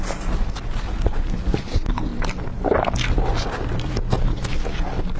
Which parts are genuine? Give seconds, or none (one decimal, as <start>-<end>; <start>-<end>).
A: 0.0-5.2